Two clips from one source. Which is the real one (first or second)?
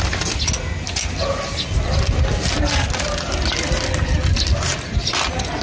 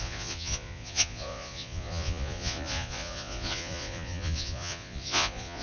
first